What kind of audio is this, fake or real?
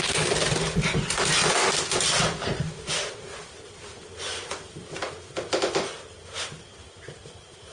real